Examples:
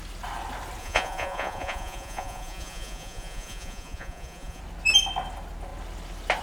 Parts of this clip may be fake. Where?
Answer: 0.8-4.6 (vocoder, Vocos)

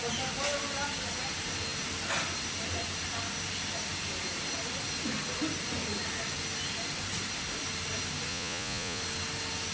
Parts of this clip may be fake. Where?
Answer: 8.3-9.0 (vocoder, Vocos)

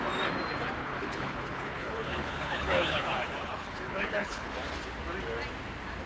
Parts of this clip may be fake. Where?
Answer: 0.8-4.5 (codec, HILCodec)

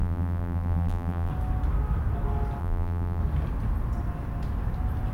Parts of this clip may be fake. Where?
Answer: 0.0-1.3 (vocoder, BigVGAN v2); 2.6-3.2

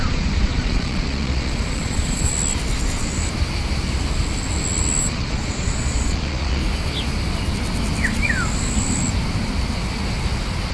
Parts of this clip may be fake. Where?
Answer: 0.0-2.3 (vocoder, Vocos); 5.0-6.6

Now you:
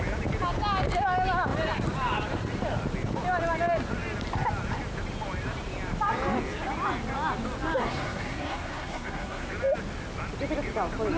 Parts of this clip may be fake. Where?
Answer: 7.8-9.5 (codec, SNAC)

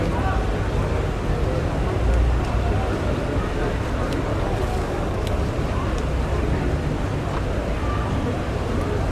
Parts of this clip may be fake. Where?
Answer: 4.3-5.4 (codec, DAC)